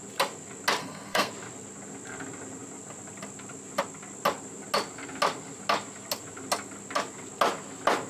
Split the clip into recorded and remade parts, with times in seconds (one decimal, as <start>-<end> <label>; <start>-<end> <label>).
0.0-0.8 recorded; 0.8-1.3 remade; 1.3-8.1 recorded